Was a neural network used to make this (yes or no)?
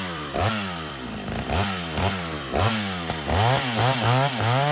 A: yes